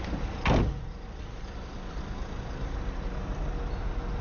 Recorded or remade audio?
recorded